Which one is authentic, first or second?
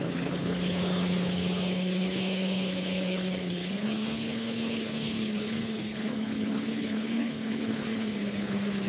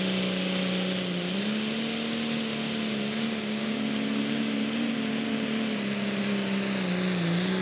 second